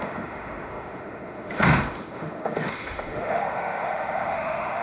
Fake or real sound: fake